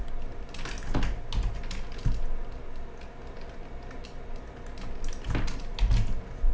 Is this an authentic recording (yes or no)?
yes